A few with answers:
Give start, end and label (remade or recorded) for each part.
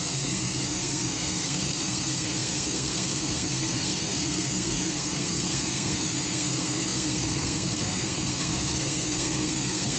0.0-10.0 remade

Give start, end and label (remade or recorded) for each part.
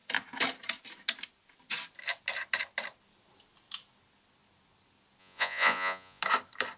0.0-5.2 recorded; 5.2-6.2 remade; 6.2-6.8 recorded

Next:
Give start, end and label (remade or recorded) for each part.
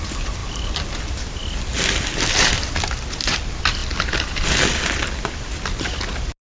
0.0-6.5 recorded